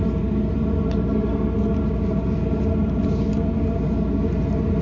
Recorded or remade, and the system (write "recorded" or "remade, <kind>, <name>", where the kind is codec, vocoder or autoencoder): recorded